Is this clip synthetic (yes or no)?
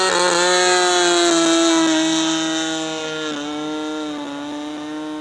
no